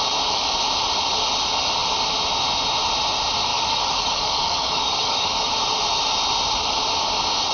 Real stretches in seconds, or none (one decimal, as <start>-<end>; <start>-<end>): 0.0-3.5; 5.5-7.5